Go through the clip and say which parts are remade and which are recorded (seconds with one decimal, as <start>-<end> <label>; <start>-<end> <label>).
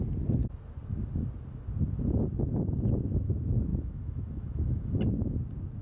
0.0-3.7 recorded; 3.7-5.0 remade; 5.0-5.8 recorded